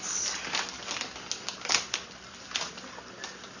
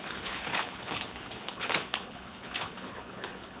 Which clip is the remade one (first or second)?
second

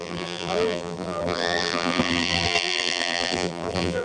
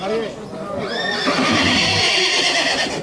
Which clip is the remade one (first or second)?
first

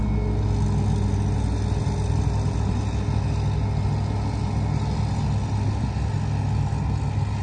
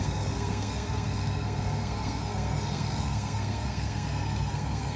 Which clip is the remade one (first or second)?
second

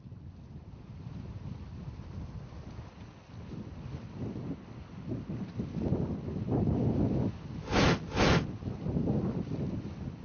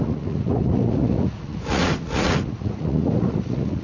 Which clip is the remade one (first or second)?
second